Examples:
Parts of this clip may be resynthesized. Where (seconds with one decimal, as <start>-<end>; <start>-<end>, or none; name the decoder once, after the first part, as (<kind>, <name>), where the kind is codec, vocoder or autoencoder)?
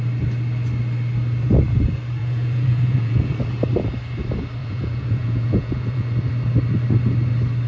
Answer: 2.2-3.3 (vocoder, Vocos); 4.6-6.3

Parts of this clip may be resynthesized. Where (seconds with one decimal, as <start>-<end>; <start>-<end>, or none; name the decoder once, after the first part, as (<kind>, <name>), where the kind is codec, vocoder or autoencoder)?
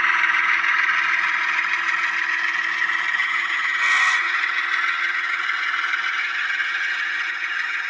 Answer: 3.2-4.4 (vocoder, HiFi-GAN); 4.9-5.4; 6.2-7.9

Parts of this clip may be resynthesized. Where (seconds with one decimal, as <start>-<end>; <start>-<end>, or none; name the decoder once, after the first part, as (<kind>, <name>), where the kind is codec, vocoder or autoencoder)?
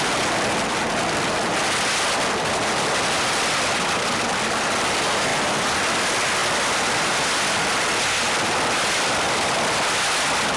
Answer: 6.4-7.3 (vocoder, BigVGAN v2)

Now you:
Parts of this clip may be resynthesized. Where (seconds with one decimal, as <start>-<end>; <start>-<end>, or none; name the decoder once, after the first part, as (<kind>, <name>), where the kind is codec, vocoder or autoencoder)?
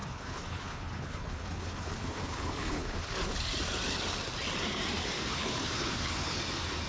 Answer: 0.0-3.1 (codec, HILCodec); 5.0-6.4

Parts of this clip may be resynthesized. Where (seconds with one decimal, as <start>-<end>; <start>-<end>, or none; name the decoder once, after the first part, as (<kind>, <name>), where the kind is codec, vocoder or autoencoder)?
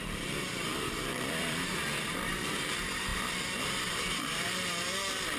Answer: 0.0-5.4 (vocoder, BigVGAN v2)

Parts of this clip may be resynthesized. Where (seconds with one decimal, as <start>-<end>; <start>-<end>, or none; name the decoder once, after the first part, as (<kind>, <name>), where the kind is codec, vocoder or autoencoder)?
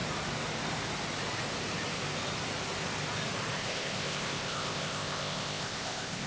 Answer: 3.6-6.3 (codec, ZipCodec)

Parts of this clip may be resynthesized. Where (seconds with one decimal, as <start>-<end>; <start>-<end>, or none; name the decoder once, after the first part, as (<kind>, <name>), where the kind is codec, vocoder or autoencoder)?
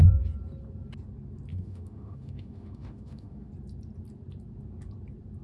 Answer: 1.5-3.5 (autoencoder, DAC-VAE)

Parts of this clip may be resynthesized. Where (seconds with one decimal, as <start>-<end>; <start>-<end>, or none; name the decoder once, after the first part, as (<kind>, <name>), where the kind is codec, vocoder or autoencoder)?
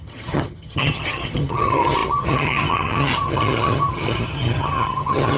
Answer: 0.0-5.4 (vocoder, HiFi-GAN)